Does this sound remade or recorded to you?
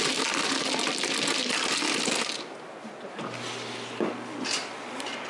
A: recorded